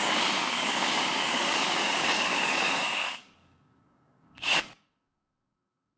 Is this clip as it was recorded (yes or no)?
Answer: no